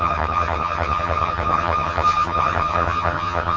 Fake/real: fake